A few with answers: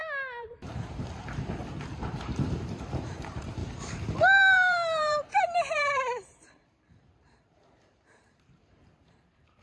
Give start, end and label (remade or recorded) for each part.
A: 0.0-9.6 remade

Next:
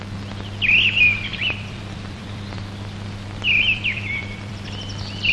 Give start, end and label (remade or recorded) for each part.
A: 0.0-1.3 recorded; 1.3-4.5 remade; 4.5-5.3 recorded

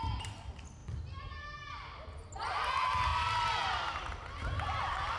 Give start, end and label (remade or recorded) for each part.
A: 0.0-3.1 recorded; 3.1-4.0 remade; 4.0-4.4 recorded; 4.4-5.2 remade

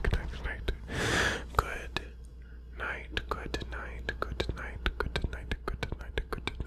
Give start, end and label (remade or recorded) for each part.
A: 0.0-6.7 recorded

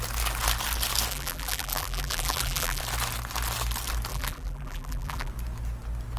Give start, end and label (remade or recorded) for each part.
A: 0.0-1.1 recorded; 1.1-2.8 remade; 2.8-4.1 recorded; 4.1-5.3 remade; 5.3-6.2 recorded

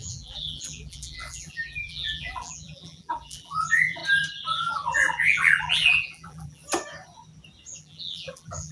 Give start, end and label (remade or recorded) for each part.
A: 0.0-4.0 remade; 4.0-4.6 recorded; 4.6-6.6 remade; 6.6-7.8 recorded; 7.8-8.7 remade